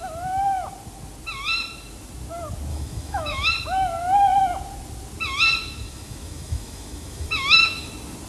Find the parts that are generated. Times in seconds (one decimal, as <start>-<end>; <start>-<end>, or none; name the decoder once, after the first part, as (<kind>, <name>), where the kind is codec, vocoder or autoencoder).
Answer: 2.7-3.5 (autoencoder, DAC-VAE); 5.6-7.9